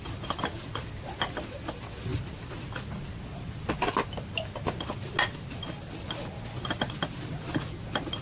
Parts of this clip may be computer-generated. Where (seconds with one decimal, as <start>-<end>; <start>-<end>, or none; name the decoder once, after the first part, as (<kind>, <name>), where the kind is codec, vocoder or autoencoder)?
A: none